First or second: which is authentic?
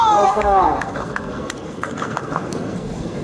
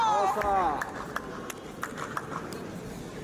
second